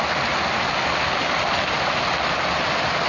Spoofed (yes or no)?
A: no